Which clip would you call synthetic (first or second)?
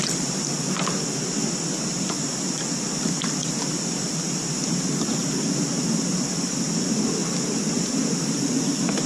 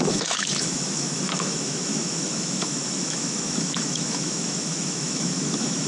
second